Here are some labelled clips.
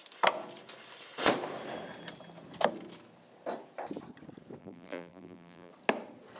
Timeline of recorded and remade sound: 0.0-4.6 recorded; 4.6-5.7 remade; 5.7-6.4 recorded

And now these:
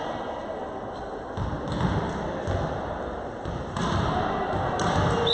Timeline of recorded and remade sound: 0.0-5.3 recorded